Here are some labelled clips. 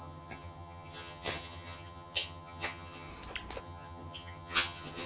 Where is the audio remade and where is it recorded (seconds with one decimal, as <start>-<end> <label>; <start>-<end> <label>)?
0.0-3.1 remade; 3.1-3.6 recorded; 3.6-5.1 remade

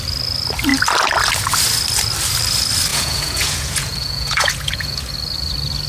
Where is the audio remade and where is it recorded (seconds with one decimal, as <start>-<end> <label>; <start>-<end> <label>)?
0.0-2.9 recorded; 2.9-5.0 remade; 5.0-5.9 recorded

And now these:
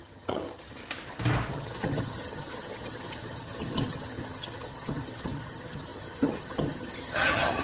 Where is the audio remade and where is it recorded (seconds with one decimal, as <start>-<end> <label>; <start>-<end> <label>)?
0.0-0.8 remade; 0.8-1.5 recorded; 1.5-7.6 remade